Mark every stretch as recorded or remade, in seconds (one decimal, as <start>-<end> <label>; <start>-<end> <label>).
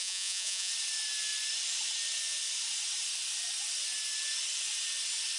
0.0-0.7 remade; 0.7-5.4 recorded